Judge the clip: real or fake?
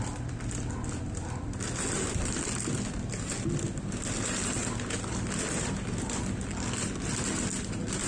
real